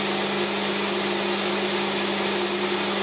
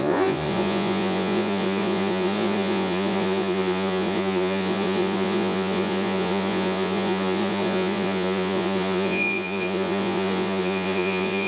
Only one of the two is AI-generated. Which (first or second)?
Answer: second